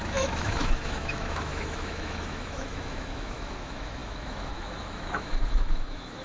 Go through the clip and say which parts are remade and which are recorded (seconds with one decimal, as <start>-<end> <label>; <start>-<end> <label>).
0.0-6.2 remade